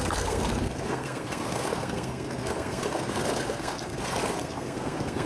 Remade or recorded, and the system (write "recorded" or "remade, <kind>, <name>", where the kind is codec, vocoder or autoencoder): remade, codec, SNAC